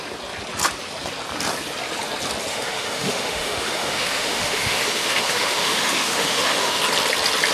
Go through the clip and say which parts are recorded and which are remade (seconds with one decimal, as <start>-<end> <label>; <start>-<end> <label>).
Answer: 0.0-2.5 recorded; 2.5-6.8 remade; 6.8-7.5 recorded